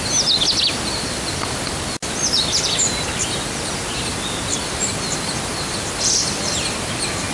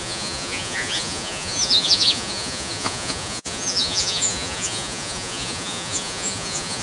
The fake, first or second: second